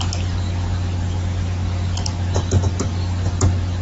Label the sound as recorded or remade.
recorded